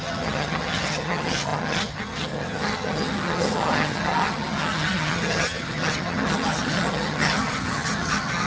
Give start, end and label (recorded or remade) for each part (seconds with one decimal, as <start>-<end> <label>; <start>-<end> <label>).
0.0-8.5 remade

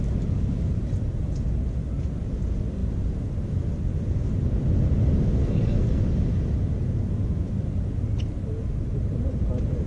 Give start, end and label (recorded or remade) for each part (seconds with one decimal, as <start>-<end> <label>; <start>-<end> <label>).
0.0-5.4 recorded; 5.4-6.0 remade; 6.0-9.9 recorded

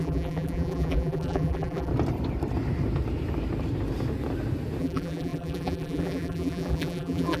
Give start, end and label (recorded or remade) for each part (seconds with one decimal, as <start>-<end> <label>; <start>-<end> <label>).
0.0-1.9 remade; 1.9-4.8 recorded; 4.8-7.4 remade

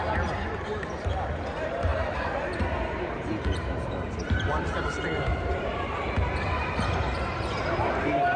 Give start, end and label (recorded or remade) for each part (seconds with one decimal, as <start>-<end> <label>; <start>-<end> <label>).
0.0-8.4 remade

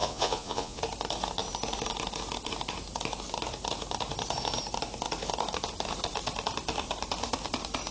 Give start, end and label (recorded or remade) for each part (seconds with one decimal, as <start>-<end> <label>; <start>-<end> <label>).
0.0-0.8 remade; 0.8-7.9 recorded

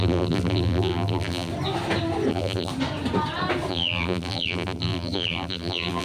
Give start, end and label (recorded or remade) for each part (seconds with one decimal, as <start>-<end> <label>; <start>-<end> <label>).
0.0-1.5 remade; 1.5-2.3 recorded; 2.3-2.7 remade; 2.7-3.7 recorded; 3.7-6.0 remade

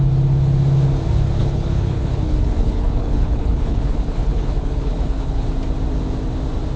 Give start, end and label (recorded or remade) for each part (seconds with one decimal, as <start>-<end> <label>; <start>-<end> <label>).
0.0-1.4 recorded; 1.4-5.5 remade; 5.5-6.8 recorded

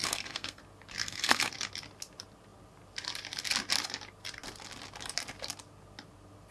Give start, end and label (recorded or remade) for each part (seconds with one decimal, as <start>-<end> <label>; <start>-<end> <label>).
0.0-0.6 remade; 0.6-1.0 recorded; 1.0-1.5 remade; 1.5-6.5 recorded